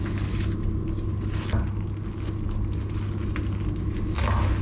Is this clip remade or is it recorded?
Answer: recorded